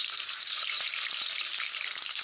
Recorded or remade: remade